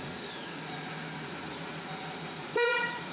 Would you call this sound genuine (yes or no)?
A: no